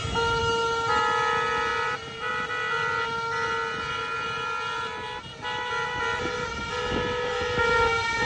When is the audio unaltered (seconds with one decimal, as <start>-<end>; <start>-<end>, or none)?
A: 0.0-8.3